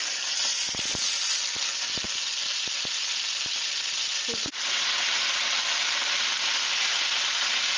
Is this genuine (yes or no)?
yes